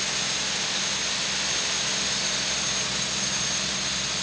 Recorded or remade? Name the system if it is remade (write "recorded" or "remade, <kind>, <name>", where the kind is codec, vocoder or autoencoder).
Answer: recorded